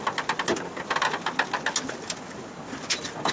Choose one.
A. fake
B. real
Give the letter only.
B